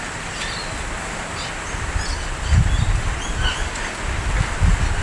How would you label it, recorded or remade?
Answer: recorded